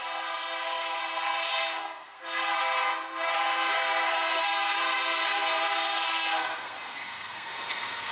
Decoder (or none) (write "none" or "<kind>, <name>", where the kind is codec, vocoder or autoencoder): codec, SNAC